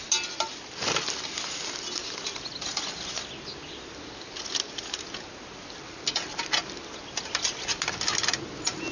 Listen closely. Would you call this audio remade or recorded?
recorded